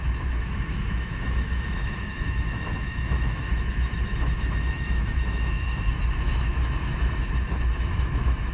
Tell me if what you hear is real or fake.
fake